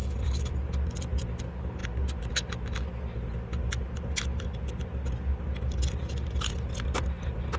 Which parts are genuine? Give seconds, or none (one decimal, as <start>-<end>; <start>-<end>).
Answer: 0.5-7.6